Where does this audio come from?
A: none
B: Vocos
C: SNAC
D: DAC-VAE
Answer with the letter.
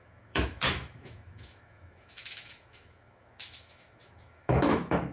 D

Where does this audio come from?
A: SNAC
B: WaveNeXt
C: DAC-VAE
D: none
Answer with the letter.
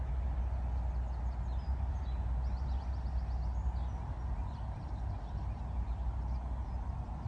D